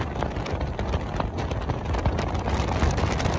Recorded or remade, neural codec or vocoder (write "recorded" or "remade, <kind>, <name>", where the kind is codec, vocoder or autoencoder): recorded